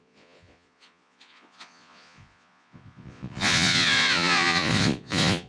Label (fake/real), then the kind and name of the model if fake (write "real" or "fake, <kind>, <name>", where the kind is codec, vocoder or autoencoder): fake, vocoder, Vocos